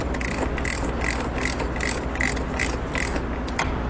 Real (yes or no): yes